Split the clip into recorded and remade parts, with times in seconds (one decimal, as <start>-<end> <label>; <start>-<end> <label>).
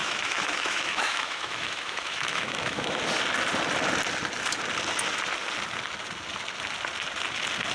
0.0-3.0 remade; 3.0-7.7 recorded